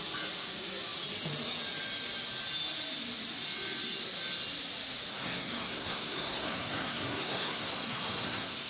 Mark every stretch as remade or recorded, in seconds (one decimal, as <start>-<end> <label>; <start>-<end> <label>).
0.0-5.1 recorded; 5.1-8.7 remade